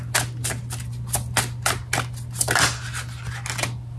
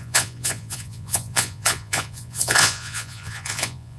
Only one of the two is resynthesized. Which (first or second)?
second